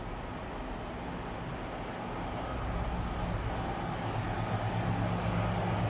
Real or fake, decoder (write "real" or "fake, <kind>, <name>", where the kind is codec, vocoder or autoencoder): real